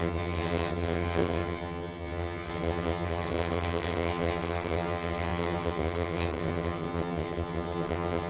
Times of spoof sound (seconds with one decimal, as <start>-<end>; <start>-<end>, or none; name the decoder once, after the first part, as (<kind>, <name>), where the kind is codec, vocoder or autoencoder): 0.0-8.3 (vocoder, HiFi-GAN)